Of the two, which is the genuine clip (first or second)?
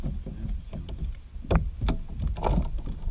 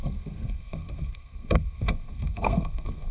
first